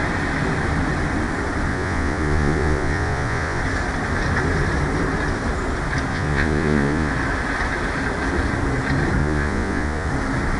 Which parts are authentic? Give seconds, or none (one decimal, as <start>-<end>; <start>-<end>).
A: 0.0-1.7; 3.6-6.1; 7.1-9.2; 10.1-10.6